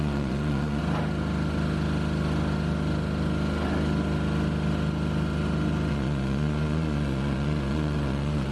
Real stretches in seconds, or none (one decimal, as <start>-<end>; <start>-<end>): 0.8-5.9